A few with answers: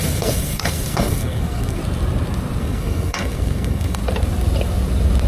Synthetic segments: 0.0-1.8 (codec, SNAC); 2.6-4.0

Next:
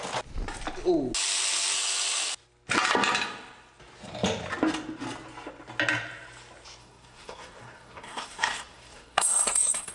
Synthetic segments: 6.8-9.9 (codec, SNAC)

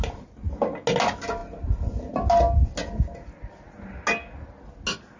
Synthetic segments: none

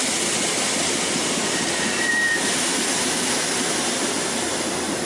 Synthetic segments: none

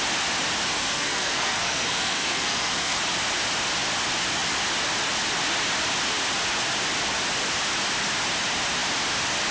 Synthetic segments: 0.8-3.0 (codec, SNAC)

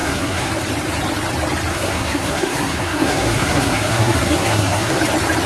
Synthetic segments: 0.0-0.5 (codec, SNAC); 1.7-5.0

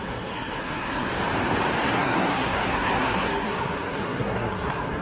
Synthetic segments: 0.0-1.1 (codec, SNAC); 1.8-5.0

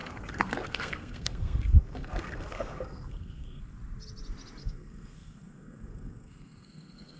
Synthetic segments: 0.0-3.6 (codec, SNAC); 4.6-7.2